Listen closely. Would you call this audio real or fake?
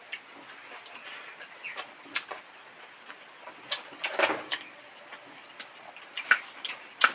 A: real